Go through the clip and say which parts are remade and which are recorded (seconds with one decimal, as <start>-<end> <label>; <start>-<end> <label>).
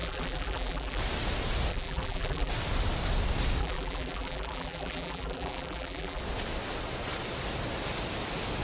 0.0-1.0 remade; 1.0-1.7 recorded; 1.7-2.5 remade; 2.5-3.6 recorded; 3.6-6.2 remade; 6.2-8.6 recorded